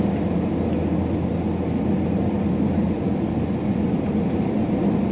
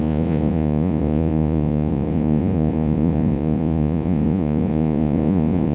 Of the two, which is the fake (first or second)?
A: second